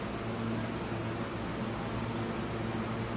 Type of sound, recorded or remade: recorded